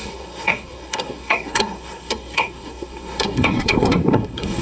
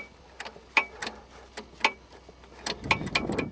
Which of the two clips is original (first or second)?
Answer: second